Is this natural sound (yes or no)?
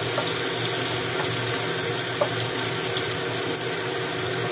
yes